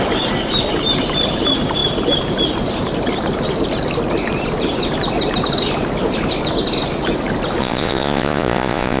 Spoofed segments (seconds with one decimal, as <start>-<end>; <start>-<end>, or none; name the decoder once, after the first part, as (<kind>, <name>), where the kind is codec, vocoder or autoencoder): 7.6-9.0 (vocoder, Vocos)